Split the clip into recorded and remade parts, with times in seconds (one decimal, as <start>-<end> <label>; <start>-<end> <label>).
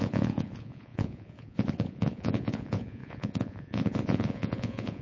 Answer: 0.0-5.0 remade